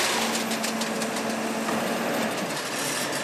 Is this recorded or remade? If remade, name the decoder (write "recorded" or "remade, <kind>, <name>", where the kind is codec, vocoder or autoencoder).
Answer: recorded